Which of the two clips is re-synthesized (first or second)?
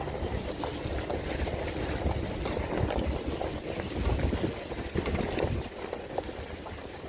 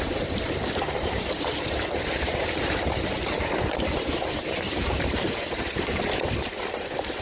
second